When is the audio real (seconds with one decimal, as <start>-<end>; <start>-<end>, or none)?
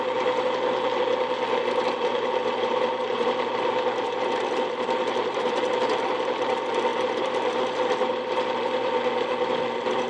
0.0-2.4; 5.4-6.9